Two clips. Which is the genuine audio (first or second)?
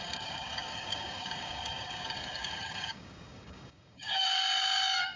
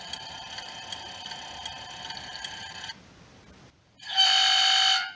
second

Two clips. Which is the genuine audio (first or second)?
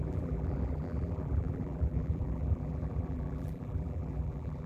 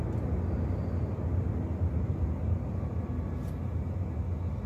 second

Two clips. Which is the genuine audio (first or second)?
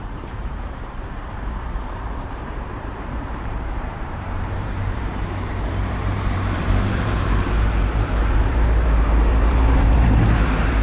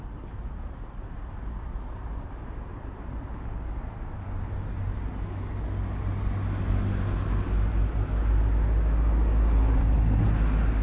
second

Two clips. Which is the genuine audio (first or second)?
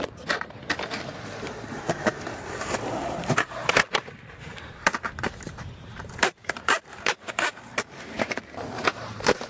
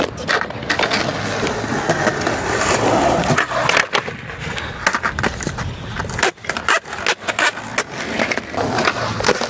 second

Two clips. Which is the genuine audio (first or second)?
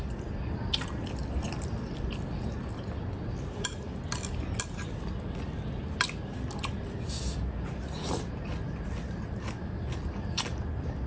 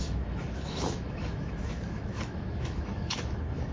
first